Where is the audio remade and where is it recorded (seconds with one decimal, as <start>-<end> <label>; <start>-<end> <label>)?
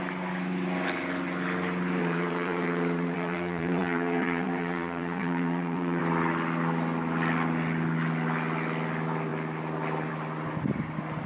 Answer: 0.0-2.0 recorded; 2.0-6.0 remade; 6.0-11.3 recorded